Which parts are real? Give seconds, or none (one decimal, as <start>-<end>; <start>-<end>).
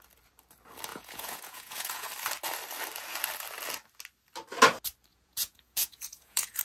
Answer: 0.0-0.9; 2.1-5.1